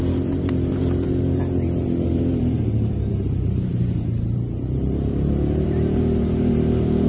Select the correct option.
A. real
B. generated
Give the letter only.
B